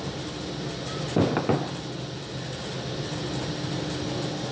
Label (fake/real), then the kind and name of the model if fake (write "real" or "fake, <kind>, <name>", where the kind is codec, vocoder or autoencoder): real